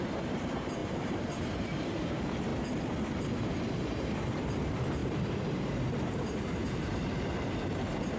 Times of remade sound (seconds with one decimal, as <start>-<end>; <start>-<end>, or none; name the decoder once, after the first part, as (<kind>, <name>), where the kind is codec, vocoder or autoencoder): 0.0-2.5 (vocoder, BigVGAN v2); 3.6-8.2